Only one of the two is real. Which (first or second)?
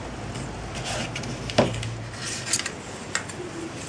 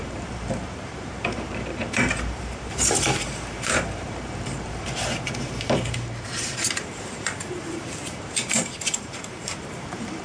first